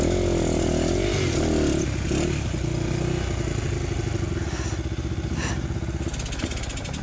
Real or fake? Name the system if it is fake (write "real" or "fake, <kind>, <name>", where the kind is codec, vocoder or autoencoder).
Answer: real